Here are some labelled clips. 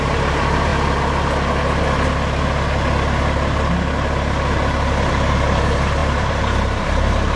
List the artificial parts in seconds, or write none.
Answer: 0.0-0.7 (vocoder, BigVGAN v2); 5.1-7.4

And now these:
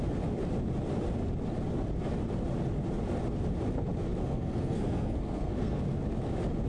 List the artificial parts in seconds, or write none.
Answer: 4.2-5.8 (codec, SNAC)